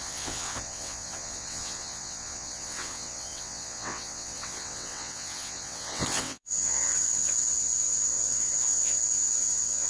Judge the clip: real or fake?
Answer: fake